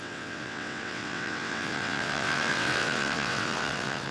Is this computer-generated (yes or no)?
yes